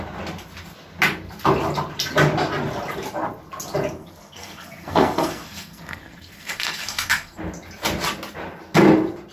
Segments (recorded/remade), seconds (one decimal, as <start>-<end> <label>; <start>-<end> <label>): 0.0-4.0 recorded; 4.0-7.4 remade; 7.4-9.3 recorded

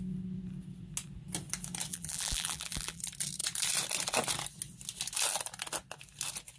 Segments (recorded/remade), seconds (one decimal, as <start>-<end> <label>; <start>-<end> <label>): 0.0-1.9 recorded; 1.9-3.0 remade; 3.0-6.6 recorded

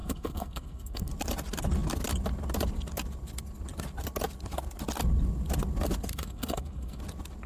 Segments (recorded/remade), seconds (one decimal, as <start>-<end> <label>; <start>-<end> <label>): 0.0-1.1 remade; 1.1-6.1 recorded; 6.1-7.0 remade; 7.0-7.5 recorded